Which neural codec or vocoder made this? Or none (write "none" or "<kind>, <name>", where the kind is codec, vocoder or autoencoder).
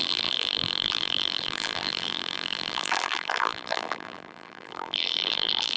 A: vocoder, BigVGAN v2